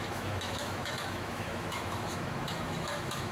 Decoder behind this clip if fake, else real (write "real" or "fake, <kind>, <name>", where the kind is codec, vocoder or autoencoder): fake, autoencoder, DAC-VAE